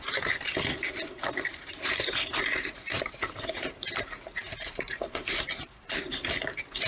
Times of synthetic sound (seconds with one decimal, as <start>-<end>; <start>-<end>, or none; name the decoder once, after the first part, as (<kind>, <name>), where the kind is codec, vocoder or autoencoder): 1.5-5.6 (vocoder, BigVGAN v2)

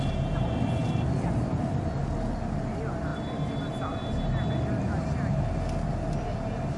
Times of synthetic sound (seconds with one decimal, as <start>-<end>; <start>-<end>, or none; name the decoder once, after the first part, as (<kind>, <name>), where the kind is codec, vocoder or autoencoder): 0.8-1.7 (vocoder, BigVGAN v2)

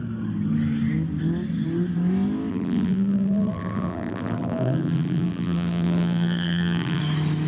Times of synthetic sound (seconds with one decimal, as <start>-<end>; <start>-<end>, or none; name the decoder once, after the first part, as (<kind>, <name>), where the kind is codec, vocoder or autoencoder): 2.5-7.0 (vocoder, BigVGAN v2)

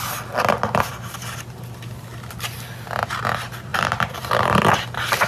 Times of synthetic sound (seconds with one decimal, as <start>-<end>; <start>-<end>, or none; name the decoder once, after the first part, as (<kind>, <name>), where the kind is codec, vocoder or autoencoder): 3.7-4.3 (vocoder, BigVGAN v2)

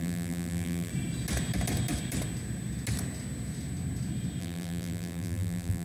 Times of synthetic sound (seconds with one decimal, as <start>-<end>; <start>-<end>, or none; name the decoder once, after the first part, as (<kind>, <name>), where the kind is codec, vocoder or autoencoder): 0.0-0.9 (vocoder, BigVGAN v2); 4.4-5.8

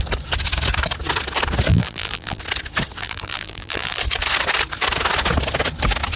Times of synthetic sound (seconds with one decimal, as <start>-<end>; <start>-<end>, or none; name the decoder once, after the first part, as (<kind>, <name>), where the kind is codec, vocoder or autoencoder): 1.7-2.4 (vocoder, BigVGAN v2); 3.0-4.0

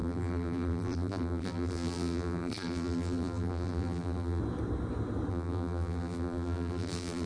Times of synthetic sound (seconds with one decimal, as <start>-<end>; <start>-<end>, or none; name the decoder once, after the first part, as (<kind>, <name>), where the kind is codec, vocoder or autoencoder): 0.0-4.4 (vocoder, BigVGAN v2); 5.3-7.3

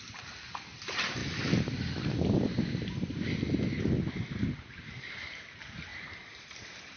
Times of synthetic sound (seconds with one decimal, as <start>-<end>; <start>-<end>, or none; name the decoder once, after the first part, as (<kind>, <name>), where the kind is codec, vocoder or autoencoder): 0.0-1.2 (vocoder, BigVGAN v2); 3.8-7.0